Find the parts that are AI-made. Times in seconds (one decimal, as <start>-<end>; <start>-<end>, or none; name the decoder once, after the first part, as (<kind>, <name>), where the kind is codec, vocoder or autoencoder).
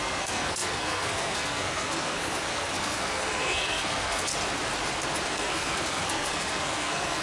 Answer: 0.0-4.3 (codec, SNAC); 5.3-7.2